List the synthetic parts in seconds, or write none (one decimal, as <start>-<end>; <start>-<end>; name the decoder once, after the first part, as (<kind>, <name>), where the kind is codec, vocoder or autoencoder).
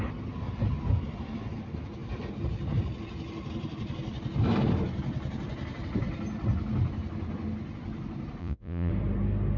8.4-8.9 (vocoder, Vocos)